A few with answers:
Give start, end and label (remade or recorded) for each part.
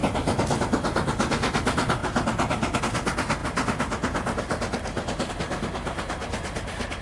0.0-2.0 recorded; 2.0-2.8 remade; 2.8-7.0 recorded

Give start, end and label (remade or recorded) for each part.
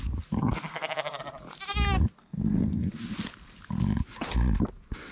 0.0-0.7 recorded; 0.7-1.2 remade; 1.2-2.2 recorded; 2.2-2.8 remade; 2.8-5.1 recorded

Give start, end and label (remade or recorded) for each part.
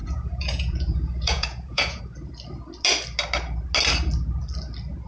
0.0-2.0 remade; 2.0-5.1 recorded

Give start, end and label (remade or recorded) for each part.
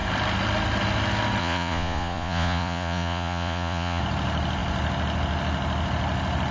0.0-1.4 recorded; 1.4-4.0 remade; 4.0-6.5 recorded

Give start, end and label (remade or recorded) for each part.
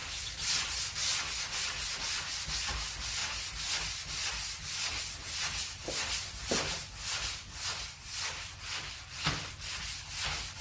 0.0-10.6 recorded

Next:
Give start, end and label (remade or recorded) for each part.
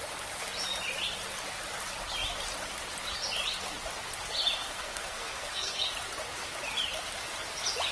0.0-4.6 recorded; 4.6-5.9 remade; 5.9-7.9 recorded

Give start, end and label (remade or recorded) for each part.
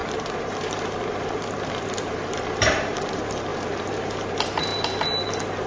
0.0-4.7 remade; 4.7-5.3 recorded; 5.3-5.7 remade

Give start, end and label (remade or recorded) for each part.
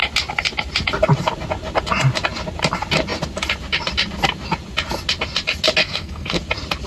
0.0-5.8 recorded; 5.8-6.4 remade; 6.4-6.9 recorded